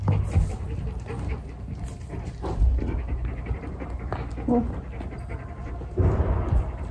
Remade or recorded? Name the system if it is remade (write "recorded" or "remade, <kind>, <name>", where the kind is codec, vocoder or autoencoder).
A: recorded